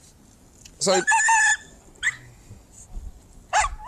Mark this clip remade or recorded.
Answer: recorded